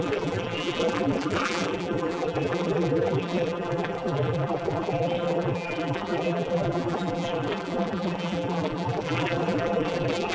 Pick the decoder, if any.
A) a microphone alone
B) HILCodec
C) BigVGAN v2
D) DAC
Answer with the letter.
C